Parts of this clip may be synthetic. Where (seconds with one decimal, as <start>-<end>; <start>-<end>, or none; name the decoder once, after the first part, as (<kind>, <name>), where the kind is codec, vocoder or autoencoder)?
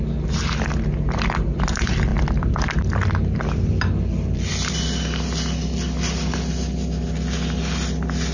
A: 2.1-4.8 (vocoder, BigVGAN v2)